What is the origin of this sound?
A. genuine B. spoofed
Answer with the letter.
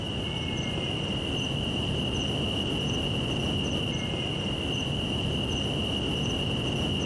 A